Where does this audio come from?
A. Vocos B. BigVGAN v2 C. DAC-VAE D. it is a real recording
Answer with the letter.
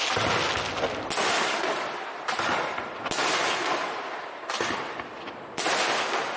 D